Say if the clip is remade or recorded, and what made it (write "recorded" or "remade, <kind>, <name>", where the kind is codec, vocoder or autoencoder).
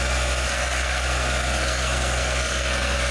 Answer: remade, codec, SNAC